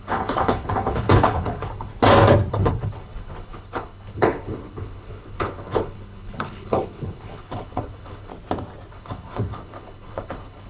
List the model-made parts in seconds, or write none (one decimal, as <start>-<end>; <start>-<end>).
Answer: 0.0-1.9; 2.5-8.3; 8.9-10.7